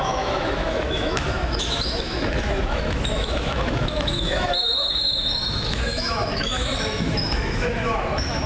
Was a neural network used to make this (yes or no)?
yes